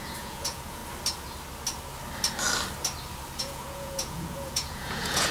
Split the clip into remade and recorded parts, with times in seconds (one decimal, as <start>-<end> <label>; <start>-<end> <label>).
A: 0.0-0.8 remade; 0.8-3.4 recorded; 3.4-5.3 remade